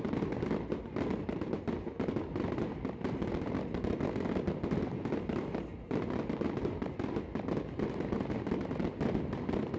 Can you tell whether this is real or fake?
real